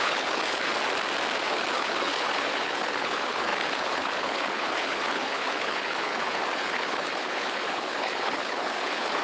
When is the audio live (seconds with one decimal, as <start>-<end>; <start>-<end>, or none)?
0.7-1.4

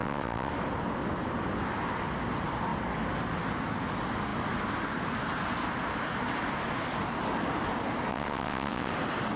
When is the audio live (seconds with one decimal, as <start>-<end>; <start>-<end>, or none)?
0.5-8.1; 8.9-9.4